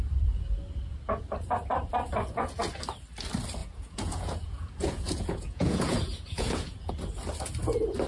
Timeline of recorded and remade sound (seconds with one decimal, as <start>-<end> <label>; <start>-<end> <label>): 0.0-3.6 recorded; 3.6-6.9 remade; 6.9-8.1 recorded